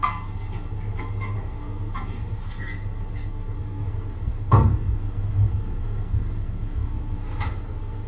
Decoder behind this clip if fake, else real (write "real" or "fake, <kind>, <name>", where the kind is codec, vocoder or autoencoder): fake, codec, SNAC